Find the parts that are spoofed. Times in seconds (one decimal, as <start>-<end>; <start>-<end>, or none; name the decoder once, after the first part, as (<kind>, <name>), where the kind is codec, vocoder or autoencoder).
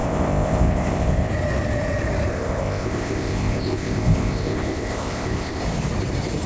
0.0-1.3 (codec, ZipCodec); 2.3-5.6